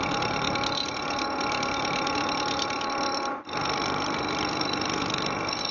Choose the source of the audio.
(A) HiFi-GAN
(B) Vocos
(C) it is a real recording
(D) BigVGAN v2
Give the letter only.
C